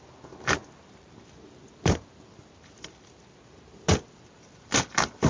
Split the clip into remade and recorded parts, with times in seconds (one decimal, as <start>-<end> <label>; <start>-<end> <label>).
0.0-5.3 recorded